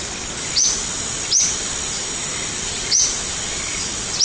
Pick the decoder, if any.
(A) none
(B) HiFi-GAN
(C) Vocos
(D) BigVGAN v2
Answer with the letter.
A